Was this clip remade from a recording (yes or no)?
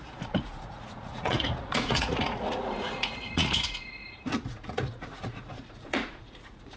yes